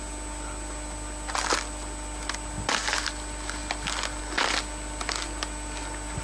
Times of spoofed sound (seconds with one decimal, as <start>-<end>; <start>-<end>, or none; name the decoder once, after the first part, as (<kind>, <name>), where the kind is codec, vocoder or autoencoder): none